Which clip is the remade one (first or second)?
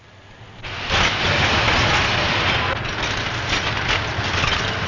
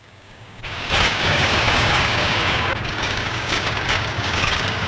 second